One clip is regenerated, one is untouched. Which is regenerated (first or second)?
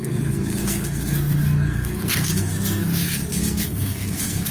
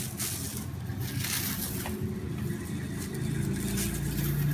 first